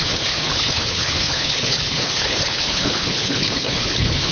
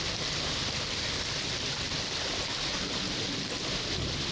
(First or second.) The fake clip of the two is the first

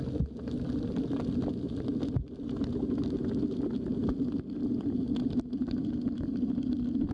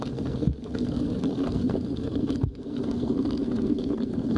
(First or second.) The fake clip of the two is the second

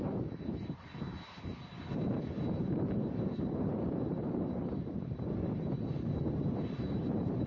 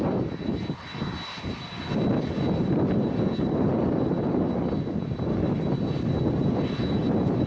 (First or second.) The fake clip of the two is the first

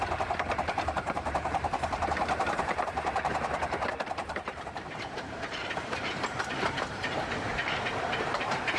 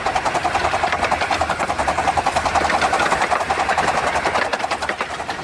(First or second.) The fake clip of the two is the first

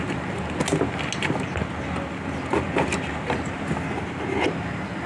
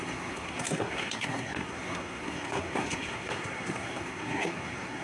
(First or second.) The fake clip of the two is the second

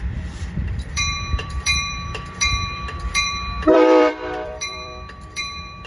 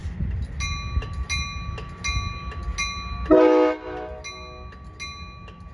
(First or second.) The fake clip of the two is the first